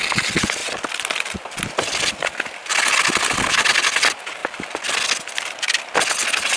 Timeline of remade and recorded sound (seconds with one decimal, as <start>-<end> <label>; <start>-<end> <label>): 0.0-6.6 recorded